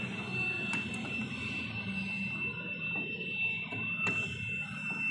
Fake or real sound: real